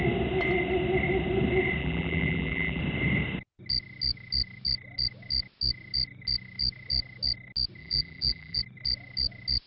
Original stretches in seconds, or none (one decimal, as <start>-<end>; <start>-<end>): 0.0-1.8; 2.8-7.8; 8.6-9.7